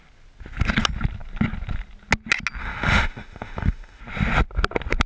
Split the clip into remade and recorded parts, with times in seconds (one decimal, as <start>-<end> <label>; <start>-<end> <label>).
0.0-2.6 recorded; 2.6-4.0 remade; 4.0-5.1 recorded